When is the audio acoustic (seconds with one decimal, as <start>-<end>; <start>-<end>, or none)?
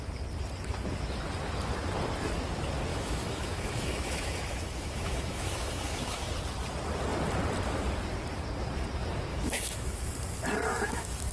0.0-2.9; 6.3-9.3; 10.1-10.7